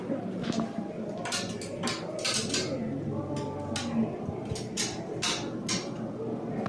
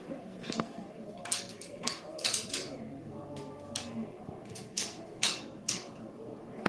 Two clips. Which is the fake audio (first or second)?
second